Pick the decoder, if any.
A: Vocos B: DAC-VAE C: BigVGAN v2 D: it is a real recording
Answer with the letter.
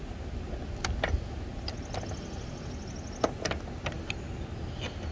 D